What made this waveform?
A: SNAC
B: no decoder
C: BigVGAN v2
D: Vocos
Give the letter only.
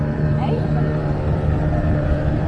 C